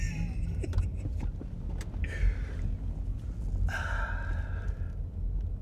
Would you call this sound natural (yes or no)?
yes